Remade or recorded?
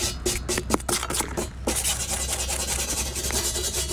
recorded